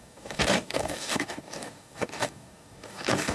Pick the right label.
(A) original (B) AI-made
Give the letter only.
B